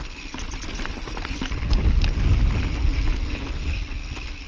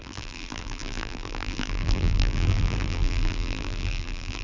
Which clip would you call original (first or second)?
first